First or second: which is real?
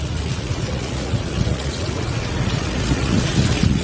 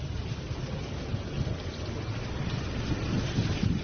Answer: second